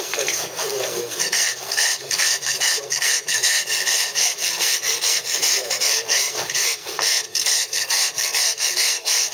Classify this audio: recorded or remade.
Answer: remade